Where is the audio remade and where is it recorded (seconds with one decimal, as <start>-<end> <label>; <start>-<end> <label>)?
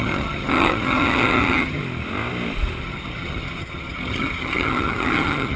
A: 0.0-1.8 remade; 1.8-2.8 recorded; 2.8-5.6 remade